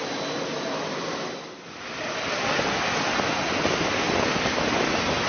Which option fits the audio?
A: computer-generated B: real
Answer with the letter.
B